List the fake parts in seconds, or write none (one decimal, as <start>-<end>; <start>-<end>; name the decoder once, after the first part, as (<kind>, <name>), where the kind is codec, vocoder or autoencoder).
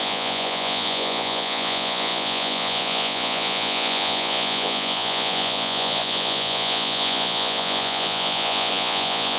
0.0-9.4 (vocoder, Vocos)